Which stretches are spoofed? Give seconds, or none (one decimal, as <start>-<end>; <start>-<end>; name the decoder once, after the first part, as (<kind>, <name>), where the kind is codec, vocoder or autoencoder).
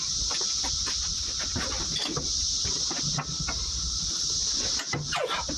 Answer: none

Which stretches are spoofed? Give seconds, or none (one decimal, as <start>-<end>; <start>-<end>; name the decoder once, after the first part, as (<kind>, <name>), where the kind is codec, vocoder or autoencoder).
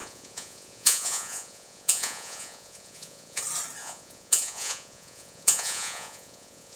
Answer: 0.0-3.4 (vocoder, Vocos); 3.8-6.8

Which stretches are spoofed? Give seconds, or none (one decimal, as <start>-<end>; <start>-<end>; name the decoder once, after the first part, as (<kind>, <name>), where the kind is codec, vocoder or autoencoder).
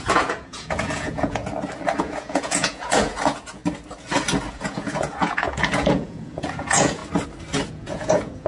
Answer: 0.0-1.4 (vocoder, Vocos); 2.0-3.6; 4.5-7.0; 7.7-8.5